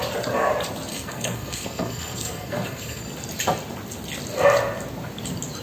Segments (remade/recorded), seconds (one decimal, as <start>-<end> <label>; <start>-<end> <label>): 0.0-0.9 recorded; 0.9-3.0 remade; 3.0-5.6 recorded